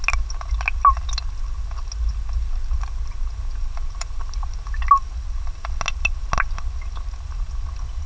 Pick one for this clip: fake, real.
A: real